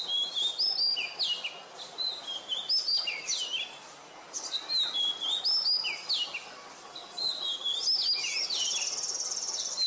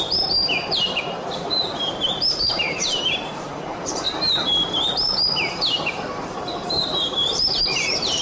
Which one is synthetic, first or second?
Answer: second